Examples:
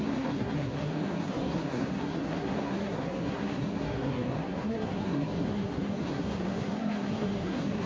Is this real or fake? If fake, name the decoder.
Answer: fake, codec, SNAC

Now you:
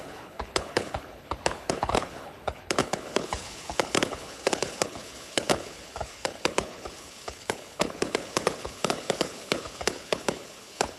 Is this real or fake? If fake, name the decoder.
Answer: fake, codec, HILCodec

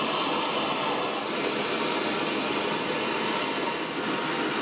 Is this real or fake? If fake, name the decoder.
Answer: real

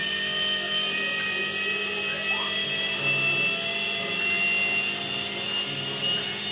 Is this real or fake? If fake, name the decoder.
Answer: real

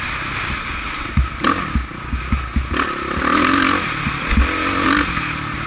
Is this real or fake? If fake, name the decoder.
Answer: real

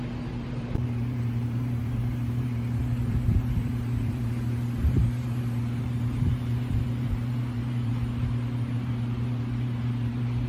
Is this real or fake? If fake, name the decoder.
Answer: fake, vocoder, BigVGAN v2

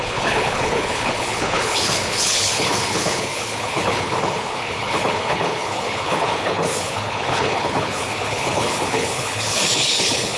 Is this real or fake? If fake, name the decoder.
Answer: fake, codec, HILCodec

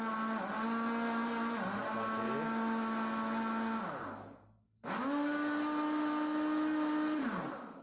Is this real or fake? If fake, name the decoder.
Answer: real